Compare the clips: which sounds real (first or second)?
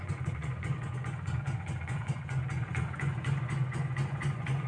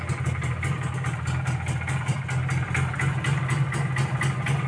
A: second